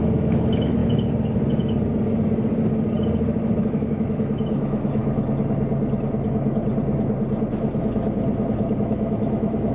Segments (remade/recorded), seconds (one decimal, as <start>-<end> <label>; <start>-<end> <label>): 0.0-0.8 remade; 0.8-3.5 recorded; 3.5-5.0 remade; 5.0-8.8 recorded; 8.8-9.7 remade